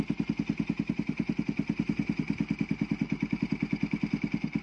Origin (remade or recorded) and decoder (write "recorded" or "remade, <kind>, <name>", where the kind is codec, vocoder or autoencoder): recorded